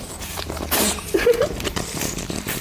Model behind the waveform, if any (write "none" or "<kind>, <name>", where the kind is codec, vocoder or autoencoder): vocoder, BigVGAN v2